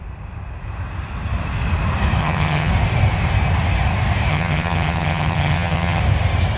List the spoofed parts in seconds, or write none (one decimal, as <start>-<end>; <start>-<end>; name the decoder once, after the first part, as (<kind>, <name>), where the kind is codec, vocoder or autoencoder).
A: 2.2-2.7 (vocoder, HiFi-GAN); 4.3-6.0